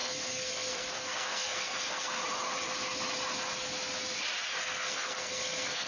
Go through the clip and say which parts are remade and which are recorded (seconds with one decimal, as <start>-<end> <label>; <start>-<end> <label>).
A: 0.0-2.2 remade; 2.2-4.6 recorded; 4.6-5.9 remade